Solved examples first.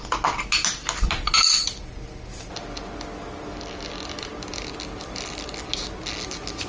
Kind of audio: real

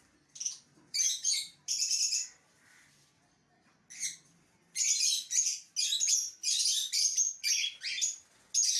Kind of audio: real